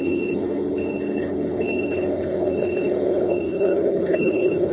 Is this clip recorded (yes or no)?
no